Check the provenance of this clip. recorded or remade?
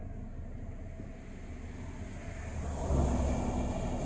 recorded